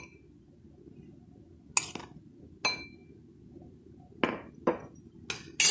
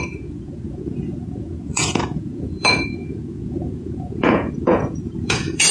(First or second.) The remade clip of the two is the second